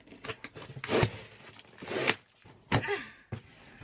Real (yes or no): yes